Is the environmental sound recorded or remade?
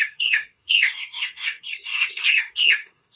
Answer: remade